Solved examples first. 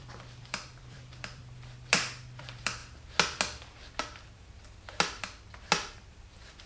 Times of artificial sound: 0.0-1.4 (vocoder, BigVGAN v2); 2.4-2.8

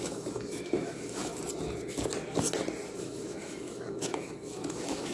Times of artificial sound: 0.0-1.3 (autoencoder, DAC-VAE); 3.0-5.1

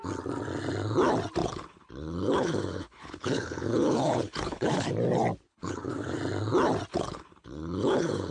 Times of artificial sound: 1.4-4.9 (codec, HILCodec); 5.5-6.2; 6.9-8.3

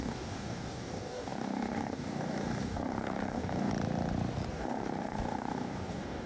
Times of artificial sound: 0.0-3.7 (codec, DAC); 4.5-6.3

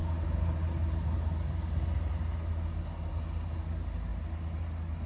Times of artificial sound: none

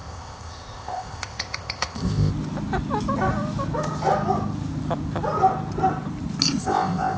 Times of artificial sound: 0.0-2.3 (codec, ZipCodec); 6.6-7.2

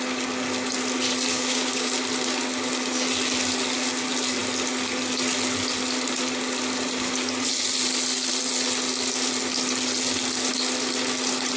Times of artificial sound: 1.3-1.9 (codec, DAC)

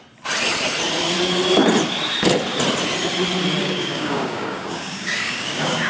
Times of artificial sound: 3.6-5.9 (codec, DAC)